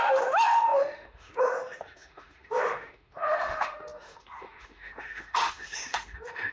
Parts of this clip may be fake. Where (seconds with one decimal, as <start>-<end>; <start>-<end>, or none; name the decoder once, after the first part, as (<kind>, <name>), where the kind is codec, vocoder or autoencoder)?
0.0-6.5 (autoencoder, DAC-VAE)